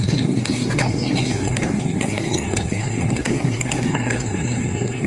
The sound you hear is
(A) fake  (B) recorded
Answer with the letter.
A